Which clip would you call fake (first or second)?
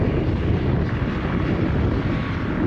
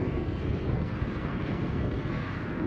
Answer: second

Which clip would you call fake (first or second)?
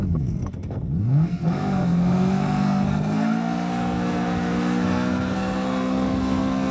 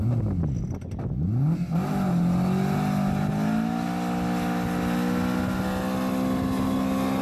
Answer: first